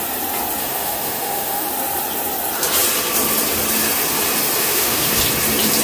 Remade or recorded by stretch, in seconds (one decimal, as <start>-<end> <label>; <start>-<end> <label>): 0.0-0.6 recorded; 0.6-1.7 remade; 1.7-4.6 recorded; 4.6-5.2 remade; 5.2-5.8 recorded

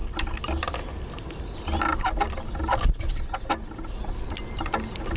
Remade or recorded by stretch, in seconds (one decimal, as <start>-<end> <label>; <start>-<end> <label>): 0.0-5.2 recorded

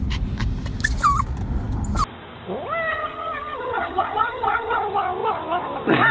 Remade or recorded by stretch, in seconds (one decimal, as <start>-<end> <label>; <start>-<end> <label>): 0.0-2.9 recorded; 2.9-4.8 remade; 4.8-6.1 recorded

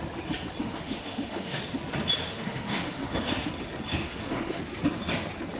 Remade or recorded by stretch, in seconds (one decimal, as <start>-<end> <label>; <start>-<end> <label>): 0.0-0.6 recorded; 0.6-1.6 remade; 1.6-2.2 recorded; 2.2-3.5 remade; 3.5-3.9 recorded; 3.9-4.6 remade; 4.6-5.6 recorded

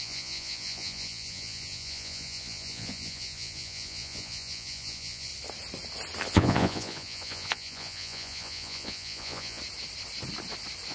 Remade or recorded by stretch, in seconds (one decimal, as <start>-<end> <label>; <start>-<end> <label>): 0.0-5.3 remade; 5.3-6.3 recorded; 6.3-9.6 remade; 9.6-10.9 recorded